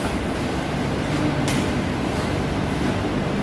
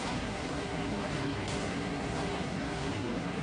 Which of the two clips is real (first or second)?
first